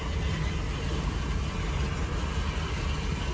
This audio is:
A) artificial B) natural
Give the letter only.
B